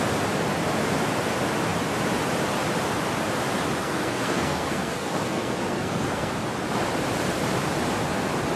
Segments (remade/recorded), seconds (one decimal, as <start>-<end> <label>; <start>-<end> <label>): 0.0-3.8 recorded; 3.8-6.3 remade; 6.3-8.6 recorded

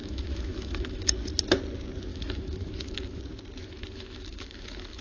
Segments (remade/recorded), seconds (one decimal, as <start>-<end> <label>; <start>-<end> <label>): 0.0-1.1 remade; 1.1-2.1 recorded; 2.1-3.2 remade; 3.2-3.6 recorded; 3.6-5.0 remade